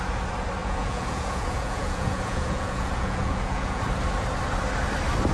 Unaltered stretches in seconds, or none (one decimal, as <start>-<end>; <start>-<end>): 0.0-0.6; 3.8-5.3